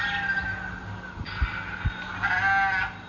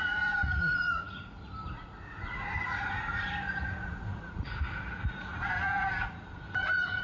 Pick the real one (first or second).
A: first